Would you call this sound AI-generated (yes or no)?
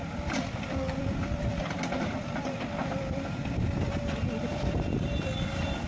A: yes